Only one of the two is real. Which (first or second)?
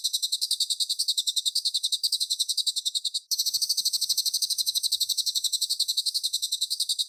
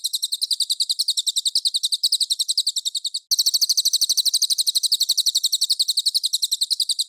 second